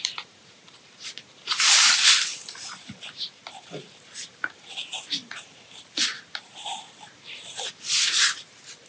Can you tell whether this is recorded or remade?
remade